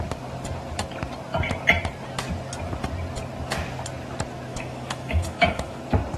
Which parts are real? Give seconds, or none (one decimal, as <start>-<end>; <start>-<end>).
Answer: 0.0-4.5; 5.8-6.2

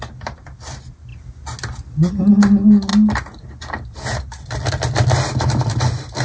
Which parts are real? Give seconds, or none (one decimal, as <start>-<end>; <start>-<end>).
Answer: 0.0-6.2

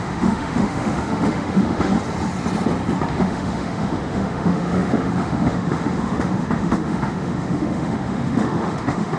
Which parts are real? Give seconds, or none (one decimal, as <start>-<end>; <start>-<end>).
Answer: 1.9-3.1

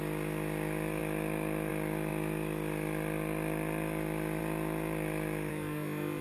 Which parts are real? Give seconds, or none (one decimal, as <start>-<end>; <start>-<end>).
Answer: 0.0-5.5

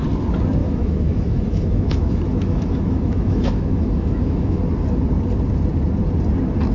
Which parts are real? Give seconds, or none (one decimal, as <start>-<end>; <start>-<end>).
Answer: 0.0-0.6; 4.6-6.7